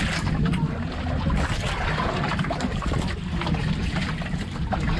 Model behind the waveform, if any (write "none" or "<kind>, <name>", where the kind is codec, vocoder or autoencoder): none